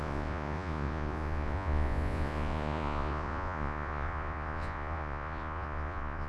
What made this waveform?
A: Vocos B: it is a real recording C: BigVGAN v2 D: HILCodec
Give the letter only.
A